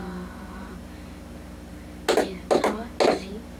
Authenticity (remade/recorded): recorded